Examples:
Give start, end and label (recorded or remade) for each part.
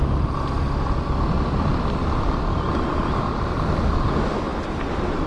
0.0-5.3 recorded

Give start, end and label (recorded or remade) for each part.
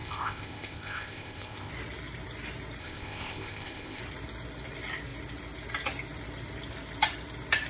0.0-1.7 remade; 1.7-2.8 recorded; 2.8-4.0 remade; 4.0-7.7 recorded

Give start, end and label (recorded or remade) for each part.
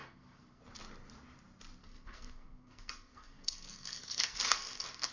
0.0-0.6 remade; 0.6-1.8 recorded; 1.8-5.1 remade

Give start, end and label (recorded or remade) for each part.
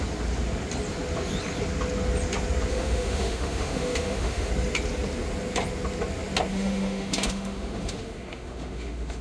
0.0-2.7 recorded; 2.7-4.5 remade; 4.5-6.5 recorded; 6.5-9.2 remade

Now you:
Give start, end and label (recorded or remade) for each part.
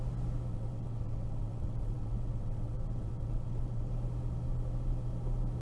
0.0-0.5 recorded; 0.5-3.9 remade; 3.9-5.6 recorded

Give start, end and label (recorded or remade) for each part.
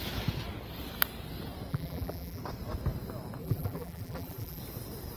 0.0-1.7 recorded; 1.7-2.4 remade; 2.4-3.4 recorded; 3.4-4.6 remade; 4.6-5.2 recorded